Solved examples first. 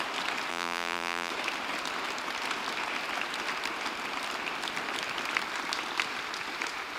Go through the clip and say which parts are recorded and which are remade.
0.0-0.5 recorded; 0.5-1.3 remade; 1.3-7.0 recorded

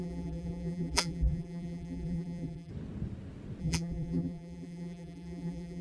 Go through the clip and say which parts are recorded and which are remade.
0.0-2.7 remade; 2.7-3.6 recorded; 3.6-5.8 remade

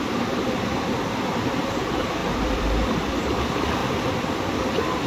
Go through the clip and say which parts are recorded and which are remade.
0.0-3.8 remade; 3.8-5.1 recorded

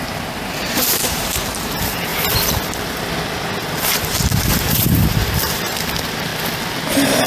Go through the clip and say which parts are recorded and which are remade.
0.0-2.1 remade; 2.1-3.8 recorded; 3.8-6.3 remade; 6.3-7.3 recorded